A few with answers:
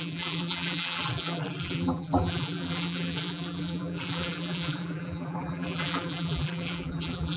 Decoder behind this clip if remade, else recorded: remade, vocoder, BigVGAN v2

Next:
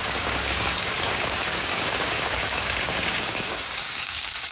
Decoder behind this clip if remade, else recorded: remade, codec, DAC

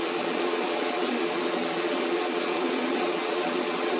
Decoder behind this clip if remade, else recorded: remade, vocoder, Vocos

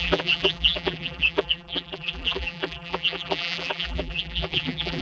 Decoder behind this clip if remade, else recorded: remade, vocoder, BigVGAN v2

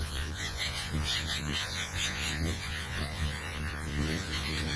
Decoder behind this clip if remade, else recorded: remade, vocoder, Vocos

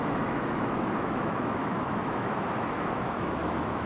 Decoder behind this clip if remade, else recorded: remade, autoencoder, DAC-VAE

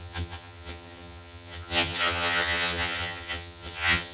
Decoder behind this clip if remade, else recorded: remade, vocoder, HiFi-GAN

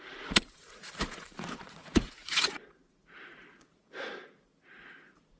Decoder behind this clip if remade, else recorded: remade, vocoder, Vocos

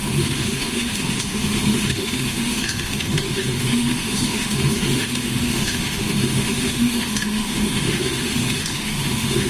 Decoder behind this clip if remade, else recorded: remade, autoencoder, DAC-VAE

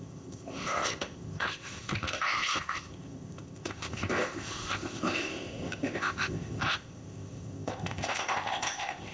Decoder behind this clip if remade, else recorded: remade, codec, ZipCodec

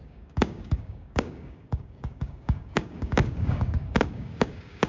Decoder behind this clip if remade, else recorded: remade, codec, DAC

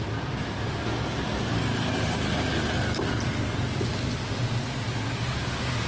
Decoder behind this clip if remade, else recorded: recorded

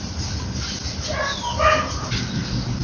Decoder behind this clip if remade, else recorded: recorded